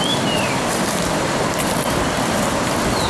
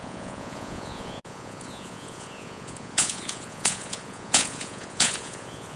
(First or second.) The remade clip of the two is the second